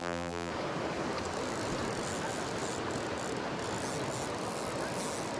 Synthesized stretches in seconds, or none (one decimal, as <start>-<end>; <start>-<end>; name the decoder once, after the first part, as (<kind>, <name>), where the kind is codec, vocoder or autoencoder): 0.0-0.5 (vocoder, BigVGAN v2)